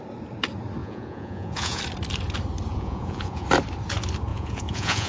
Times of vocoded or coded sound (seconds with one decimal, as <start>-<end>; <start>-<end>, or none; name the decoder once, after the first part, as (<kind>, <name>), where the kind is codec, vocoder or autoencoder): 0.8-1.8 (vocoder, Vocos); 2.7-3.5; 4.3-5.1